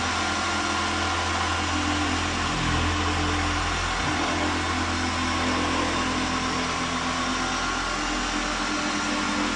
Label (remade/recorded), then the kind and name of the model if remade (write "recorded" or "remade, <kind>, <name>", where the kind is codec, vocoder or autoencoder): recorded